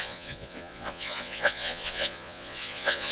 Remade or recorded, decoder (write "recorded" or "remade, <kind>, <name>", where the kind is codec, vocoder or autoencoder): remade, vocoder, Vocos